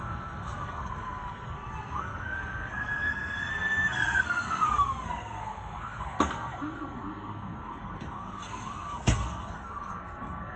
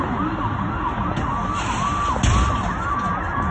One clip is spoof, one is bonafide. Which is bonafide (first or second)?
second